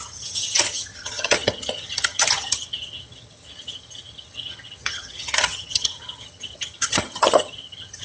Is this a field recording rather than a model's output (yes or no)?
no